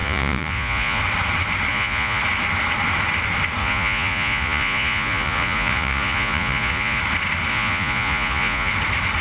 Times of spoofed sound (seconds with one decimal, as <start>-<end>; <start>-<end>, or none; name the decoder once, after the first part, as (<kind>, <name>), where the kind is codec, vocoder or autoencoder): 0.0-1.0 (vocoder, Vocos); 1.7-2.2; 3.6-7.0; 7.5-8.7